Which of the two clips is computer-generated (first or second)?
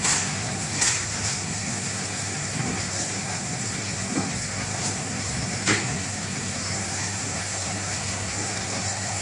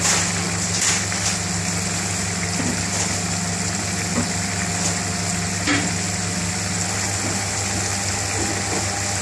first